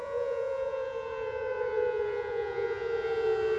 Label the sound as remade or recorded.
remade